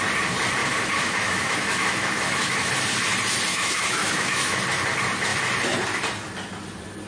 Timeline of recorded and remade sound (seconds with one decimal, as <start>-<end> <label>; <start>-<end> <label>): 0.0-0.6 recorded; 0.6-2.7 remade; 2.7-3.5 recorded; 3.5-4.6 remade; 4.6-7.1 recorded